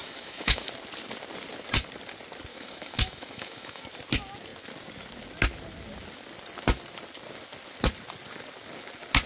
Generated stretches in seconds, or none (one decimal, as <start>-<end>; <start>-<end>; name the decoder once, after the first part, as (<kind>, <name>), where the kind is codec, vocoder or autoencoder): 0.0-0.7 (autoencoder, DAC-VAE); 2.5-3.8